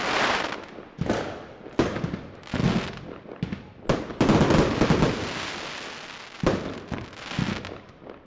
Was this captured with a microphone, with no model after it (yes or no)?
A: yes